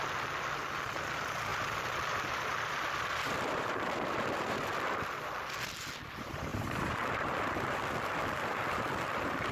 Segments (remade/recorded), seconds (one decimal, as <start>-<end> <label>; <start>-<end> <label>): 0.0-1.5 recorded; 1.5-4.7 remade; 4.7-6.5 recorded; 6.5-8.8 remade; 8.8-9.5 recorded